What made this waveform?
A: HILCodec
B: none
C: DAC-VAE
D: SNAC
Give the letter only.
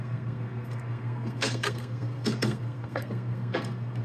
D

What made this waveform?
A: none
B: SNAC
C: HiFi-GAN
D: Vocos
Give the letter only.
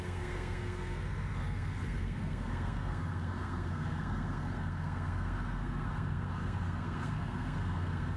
B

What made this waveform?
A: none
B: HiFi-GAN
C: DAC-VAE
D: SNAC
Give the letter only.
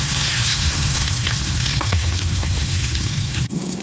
D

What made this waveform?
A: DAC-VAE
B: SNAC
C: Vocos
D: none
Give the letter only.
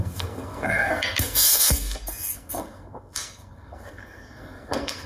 B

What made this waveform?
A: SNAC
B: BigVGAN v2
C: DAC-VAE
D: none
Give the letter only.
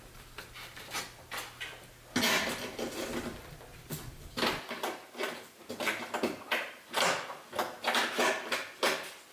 D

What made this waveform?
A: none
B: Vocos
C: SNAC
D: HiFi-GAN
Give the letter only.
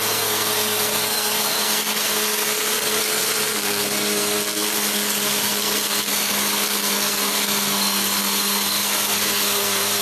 C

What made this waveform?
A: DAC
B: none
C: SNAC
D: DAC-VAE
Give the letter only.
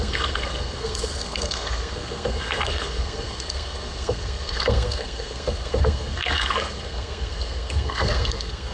C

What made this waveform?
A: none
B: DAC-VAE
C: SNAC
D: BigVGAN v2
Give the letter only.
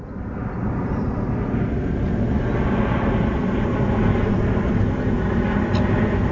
A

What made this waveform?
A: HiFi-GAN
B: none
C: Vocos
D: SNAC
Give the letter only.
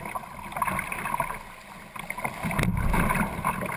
B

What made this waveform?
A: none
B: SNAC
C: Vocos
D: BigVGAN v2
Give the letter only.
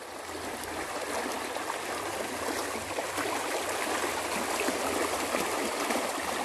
A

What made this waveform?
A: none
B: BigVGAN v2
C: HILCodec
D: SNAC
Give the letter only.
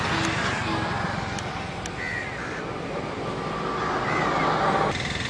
A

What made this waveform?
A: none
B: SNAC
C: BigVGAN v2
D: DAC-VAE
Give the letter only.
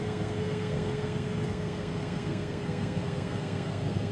B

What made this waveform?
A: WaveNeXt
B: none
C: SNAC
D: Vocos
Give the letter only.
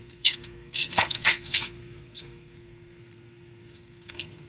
C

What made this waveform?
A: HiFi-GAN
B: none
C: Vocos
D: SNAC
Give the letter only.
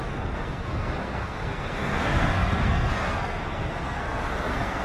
D